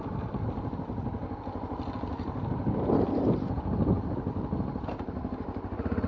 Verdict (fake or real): real